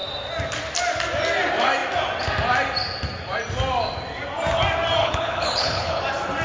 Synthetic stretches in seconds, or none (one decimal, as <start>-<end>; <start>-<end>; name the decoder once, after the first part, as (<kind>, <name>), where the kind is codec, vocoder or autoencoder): 5.0-6.0 (codec, HILCodec)